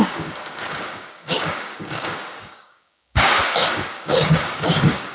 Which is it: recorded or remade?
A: remade